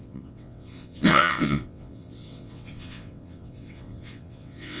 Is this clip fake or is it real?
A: fake